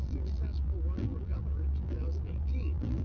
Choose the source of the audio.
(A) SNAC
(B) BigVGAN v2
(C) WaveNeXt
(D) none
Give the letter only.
B